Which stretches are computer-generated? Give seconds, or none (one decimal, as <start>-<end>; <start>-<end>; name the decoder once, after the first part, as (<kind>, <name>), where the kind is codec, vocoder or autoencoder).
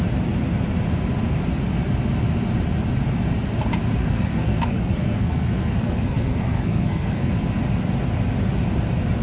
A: 4.0-7.3 (codec, SNAC)